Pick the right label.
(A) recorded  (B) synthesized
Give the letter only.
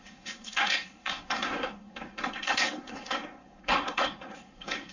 B